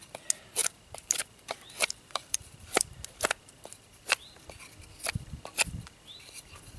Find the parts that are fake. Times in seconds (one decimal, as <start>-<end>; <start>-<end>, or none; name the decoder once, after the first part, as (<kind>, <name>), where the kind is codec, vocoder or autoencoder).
0.6-3.2 (vocoder, BigVGAN v2)